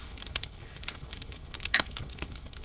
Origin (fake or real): fake